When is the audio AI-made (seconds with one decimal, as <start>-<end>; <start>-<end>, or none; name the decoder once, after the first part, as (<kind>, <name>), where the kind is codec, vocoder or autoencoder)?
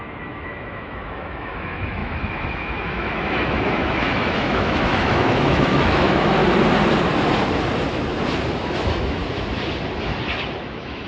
0.0-6.4 (autoencoder, DAC-VAE); 8.5-9.2; 10.6-11.1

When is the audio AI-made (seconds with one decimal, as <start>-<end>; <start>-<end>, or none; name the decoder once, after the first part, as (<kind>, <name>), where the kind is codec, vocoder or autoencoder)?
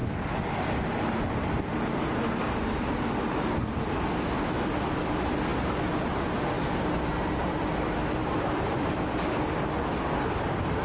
8.2-9.0 (vocoder, BigVGAN v2)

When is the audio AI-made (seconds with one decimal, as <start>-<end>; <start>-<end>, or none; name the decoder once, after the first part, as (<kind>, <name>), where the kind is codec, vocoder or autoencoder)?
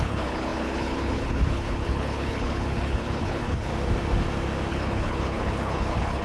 0.0-3.7 (codec, HILCodec); 4.7-6.2